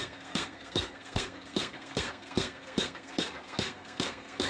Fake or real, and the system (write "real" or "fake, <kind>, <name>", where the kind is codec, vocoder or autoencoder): fake, codec, SNAC